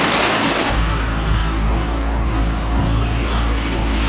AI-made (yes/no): yes